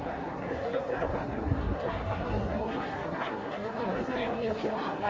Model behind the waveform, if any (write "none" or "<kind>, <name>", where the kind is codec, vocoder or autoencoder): codec, SNAC